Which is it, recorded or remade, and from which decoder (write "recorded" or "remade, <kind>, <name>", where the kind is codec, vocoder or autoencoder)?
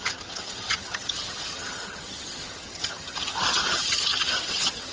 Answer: remade, vocoder, HiFi-GAN